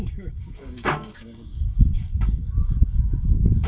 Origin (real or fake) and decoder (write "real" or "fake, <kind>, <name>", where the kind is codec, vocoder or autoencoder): fake, codec, DAC